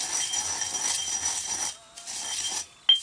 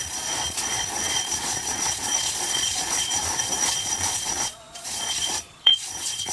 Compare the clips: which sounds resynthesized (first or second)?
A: second